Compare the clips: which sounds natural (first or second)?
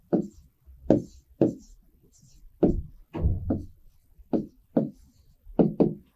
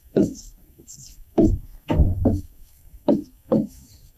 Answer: first